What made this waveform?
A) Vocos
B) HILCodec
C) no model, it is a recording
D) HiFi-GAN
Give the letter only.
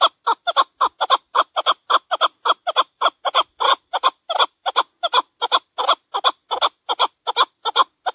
C